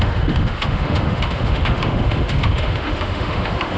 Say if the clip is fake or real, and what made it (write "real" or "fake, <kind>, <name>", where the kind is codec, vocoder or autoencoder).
fake, autoencoder, DAC-VAE